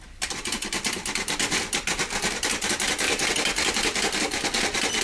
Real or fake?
real